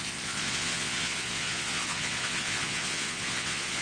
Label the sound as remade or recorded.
remade